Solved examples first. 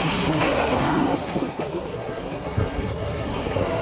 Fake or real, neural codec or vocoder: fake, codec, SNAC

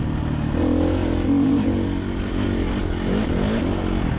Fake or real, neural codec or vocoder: real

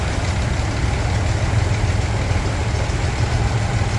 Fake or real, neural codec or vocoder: real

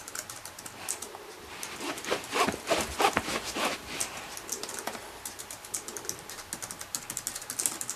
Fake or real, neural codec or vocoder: real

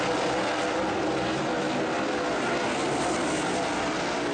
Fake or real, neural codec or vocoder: real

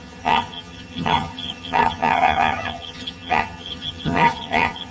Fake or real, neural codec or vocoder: fake, vocoder, HiFi-GAN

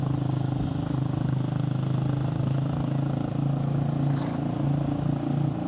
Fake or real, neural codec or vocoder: real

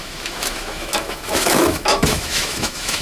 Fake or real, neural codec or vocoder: fake, autoencoder, DAC-VAE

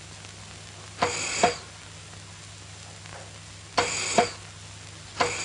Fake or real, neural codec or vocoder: real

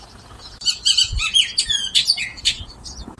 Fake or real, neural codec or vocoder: fake, vocoder, Vocos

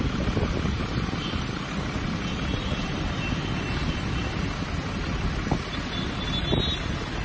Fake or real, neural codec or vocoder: real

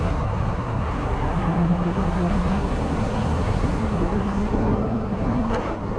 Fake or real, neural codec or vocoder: fake, codec, SNAC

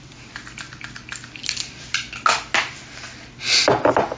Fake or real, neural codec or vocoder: real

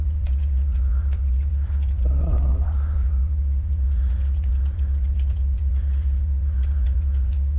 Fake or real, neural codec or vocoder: fake, vocoder, WaveNeXt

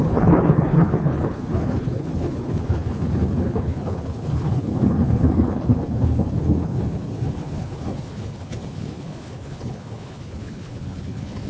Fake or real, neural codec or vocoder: fake, codec, HILCodec